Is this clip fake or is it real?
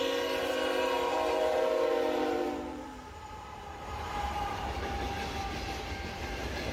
fake